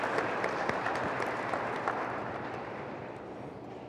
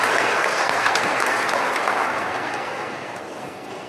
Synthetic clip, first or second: second